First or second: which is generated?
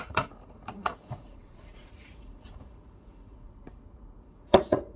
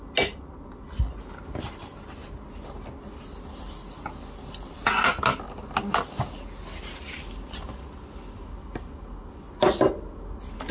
first